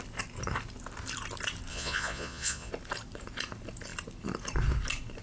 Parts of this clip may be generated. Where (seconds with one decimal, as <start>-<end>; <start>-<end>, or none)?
1.7-2.7